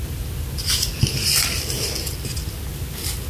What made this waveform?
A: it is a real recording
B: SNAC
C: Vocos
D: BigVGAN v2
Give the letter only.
A